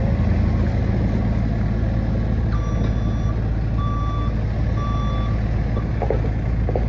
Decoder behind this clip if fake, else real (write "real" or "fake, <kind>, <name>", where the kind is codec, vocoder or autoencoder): real